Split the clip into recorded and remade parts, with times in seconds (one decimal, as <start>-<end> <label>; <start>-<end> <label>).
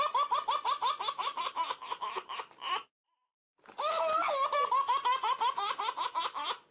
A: 0.0-1.2 recorded; 1.2-3.4 remade; 3.4-6.7 recorded